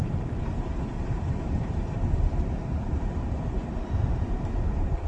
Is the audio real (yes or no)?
no